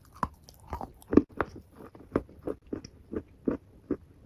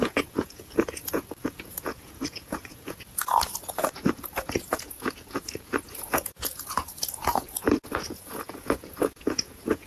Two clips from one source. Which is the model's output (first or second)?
second